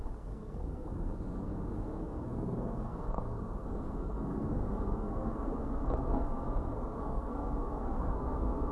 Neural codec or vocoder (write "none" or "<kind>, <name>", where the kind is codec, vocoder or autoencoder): codec, SNAC